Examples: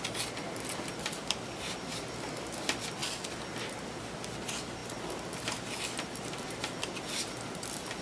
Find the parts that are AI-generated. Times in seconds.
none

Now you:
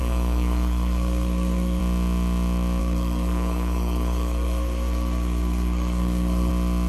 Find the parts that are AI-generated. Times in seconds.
0.0-1.8 (codec, SNAC); 2.8-6.5